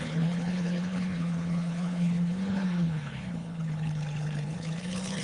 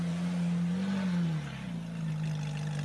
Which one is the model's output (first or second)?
first